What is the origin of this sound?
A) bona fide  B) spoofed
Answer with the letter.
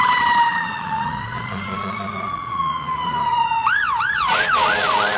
B